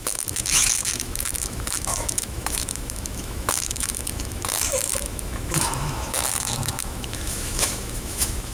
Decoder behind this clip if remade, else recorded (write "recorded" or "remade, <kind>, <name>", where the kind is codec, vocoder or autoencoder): remade, autoencoder, DAC-VAE